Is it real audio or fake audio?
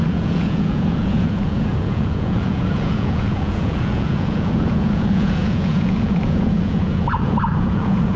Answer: fake